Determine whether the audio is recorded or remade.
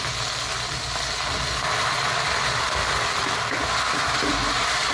recorded